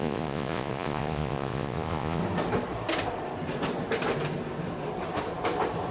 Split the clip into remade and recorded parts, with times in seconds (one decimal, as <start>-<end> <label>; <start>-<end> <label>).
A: 0.0-2.2 remade; 2.2-5.9 recorded